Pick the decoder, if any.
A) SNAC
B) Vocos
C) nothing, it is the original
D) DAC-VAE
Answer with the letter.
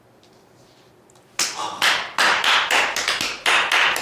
C